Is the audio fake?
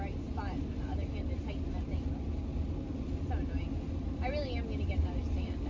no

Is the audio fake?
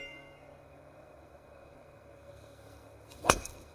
yes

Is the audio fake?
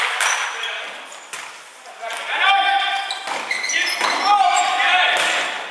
no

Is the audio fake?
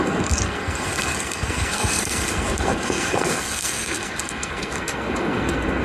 yes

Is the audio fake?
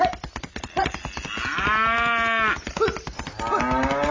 no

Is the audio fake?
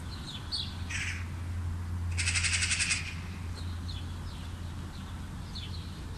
no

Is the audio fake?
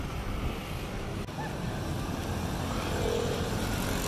no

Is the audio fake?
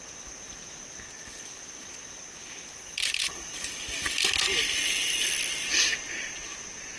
no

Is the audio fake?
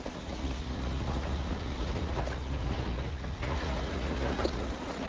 yes